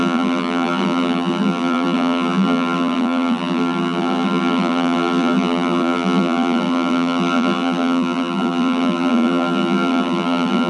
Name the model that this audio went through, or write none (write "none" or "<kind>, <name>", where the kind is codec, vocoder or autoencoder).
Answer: vocoder, BigVGAN v2